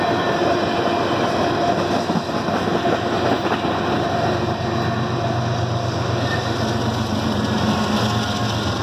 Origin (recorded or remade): recorded